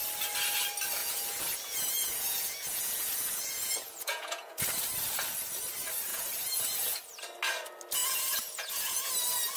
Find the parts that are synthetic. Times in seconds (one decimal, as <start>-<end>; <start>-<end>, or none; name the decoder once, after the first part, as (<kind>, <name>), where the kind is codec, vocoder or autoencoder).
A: 1.0-4.5 (vocoder, Vocos); 6.1-7.0; 8.0-9.1